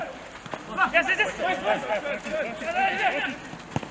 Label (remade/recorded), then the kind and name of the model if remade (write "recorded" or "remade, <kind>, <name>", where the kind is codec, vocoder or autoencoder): recorded